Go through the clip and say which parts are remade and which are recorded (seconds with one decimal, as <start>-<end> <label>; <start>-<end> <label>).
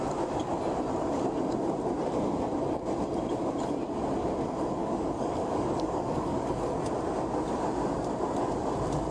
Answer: 0.0-4.8 recorded; 4.8-6.8 remade; 6.8-9.1 recorded